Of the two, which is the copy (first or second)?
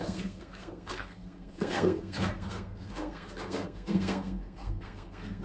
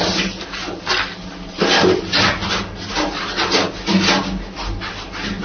first